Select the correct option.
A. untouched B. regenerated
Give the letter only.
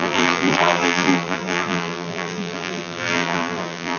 B